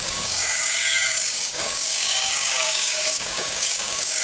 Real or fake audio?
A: fake